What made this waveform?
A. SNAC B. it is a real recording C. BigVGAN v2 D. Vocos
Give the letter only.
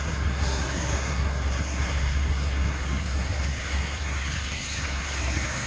A